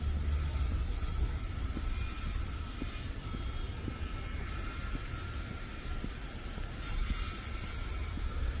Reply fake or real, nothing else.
fake